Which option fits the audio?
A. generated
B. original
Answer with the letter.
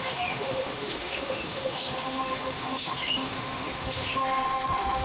A